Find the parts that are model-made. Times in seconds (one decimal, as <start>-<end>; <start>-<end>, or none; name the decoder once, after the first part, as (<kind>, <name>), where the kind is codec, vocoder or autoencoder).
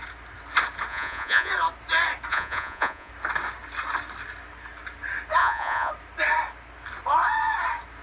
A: 0.9-1.5 (vocoder, Vocos); 2.3-3.1; 5.4-5.9